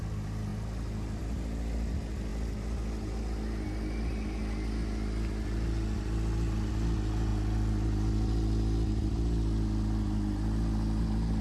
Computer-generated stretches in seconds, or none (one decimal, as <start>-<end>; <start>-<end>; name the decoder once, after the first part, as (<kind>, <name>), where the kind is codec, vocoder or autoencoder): none